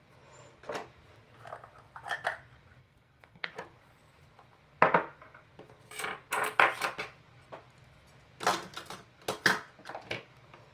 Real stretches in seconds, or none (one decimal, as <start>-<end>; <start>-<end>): 0.0-2.8; 3.5-10.7